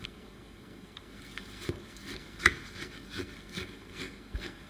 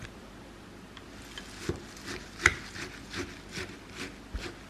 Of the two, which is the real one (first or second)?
second